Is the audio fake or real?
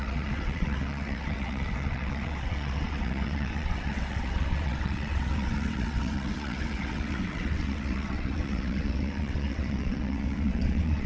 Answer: fake